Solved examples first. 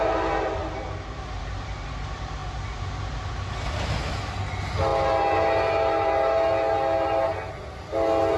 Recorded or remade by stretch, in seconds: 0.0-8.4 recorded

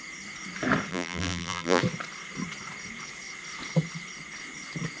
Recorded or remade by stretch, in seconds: 0.0-0.9 recorded; 0.9-1.8 remade; 1.8-5.0 recorded

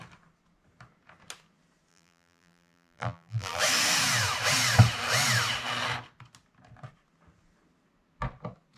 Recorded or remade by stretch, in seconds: 0.0-1.9 recorded; 1.9-3.6 remade; 3.6-8.8 recorded